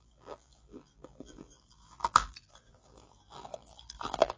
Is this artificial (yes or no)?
yes